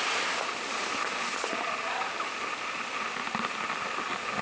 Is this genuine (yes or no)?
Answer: yes